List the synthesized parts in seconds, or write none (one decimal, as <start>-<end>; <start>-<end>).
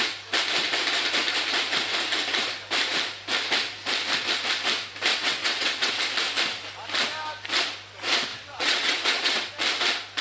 5.1-5.9; 8.3-9.5